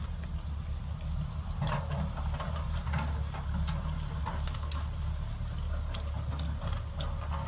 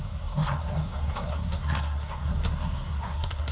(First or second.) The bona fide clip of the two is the first